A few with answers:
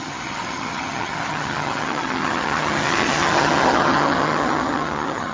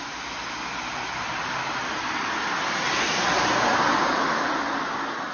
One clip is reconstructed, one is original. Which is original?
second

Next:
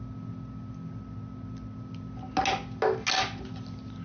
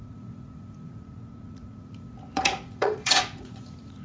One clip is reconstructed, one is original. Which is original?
first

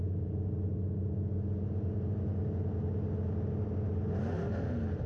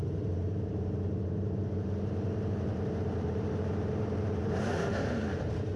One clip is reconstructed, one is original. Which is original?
first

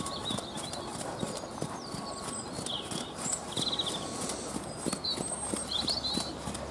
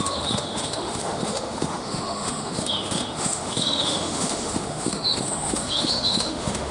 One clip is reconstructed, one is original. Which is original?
first